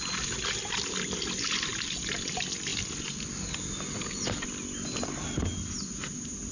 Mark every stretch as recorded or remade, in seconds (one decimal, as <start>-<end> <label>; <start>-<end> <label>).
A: 0.0-6.5 recorded